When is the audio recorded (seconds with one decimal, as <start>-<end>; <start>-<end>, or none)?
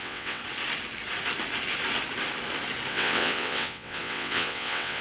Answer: 0.4-2.9